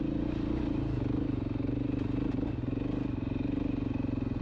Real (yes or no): yes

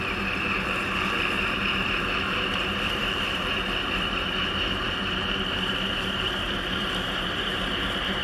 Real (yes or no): no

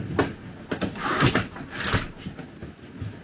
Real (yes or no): yes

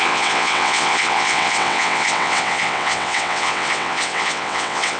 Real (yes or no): no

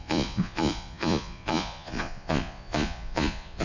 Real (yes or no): no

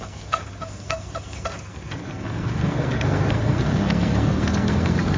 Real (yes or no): no